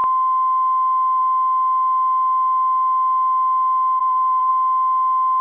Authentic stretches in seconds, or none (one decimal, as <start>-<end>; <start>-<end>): 0.0-4.0; 4.5-5.4